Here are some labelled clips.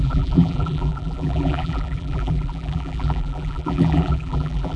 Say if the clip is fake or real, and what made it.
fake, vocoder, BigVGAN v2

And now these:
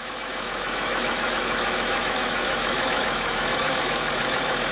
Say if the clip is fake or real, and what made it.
fake, autoencoder, DAC-VAE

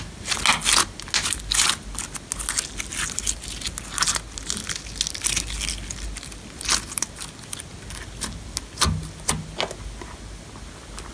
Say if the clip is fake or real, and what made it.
real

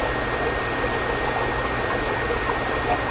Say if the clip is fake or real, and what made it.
real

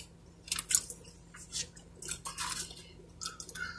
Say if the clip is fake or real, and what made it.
real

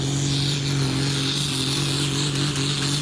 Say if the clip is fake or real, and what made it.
real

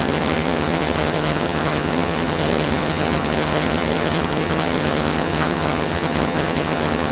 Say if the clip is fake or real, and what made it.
fake, vocoder, HiFi-GAN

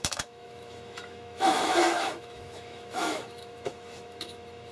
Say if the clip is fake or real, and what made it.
fake, autoencoder, DAC-VAE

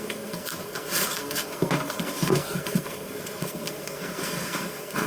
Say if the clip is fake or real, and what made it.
fake, codec, SNAC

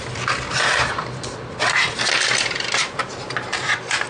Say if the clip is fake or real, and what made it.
real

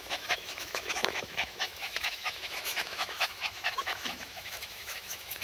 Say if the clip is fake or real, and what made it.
fake, autoencoder, DAC-VAE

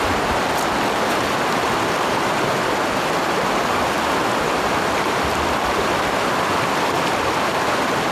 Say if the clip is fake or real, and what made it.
real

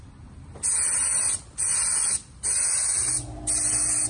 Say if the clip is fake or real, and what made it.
real